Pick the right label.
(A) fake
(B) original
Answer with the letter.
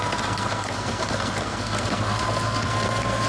A